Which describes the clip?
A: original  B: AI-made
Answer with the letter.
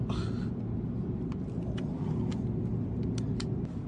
A